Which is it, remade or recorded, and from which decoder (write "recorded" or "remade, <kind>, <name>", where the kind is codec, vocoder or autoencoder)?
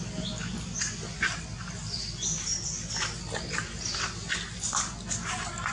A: recorded